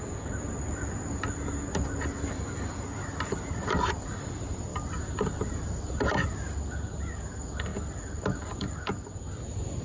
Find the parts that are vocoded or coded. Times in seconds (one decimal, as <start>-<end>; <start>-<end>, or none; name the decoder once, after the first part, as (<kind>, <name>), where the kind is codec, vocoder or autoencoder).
none